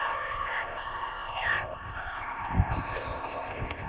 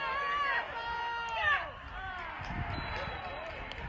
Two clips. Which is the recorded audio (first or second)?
second